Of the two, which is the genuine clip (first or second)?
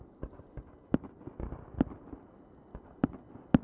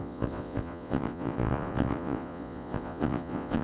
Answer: first